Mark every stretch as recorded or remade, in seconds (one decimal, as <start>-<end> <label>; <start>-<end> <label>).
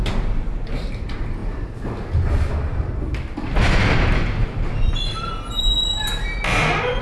0.0-1.4 recorded; 1.4-5.6 remade; 5.6-7.0 recorded